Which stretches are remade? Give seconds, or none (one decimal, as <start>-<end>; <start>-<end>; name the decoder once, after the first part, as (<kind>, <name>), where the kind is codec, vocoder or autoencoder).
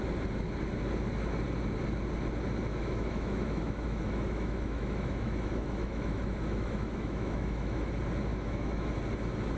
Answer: 2.7-7.9 (autoencoder, DAC-VAE); 8.3-8.9